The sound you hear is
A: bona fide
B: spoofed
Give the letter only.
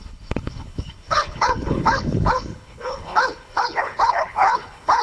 B